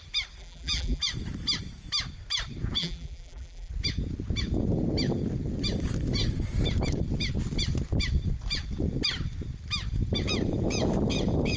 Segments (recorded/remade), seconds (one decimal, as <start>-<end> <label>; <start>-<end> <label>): 0.0-0.4 recorded; 0.4-1.0 remade; 1.0-2.8 recorded; 2.8-3.7 remade; 3.7-11.6 recorded